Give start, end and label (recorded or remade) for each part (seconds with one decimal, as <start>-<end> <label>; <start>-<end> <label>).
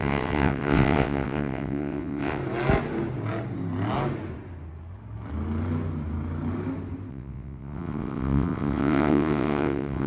0.0-2.4 remade; 2.4-7.1 recorded; 7.1-10.1 remade